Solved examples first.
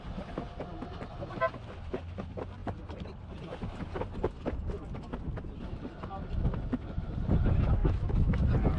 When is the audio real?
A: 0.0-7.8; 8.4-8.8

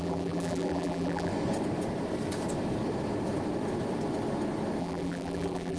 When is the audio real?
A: 1.3-4.8

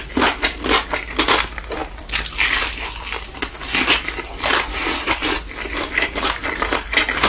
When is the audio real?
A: 0.0-7.3

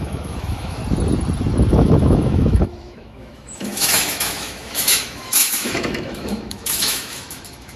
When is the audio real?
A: 0.8-1.7

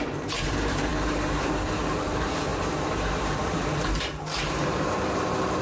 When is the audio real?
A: none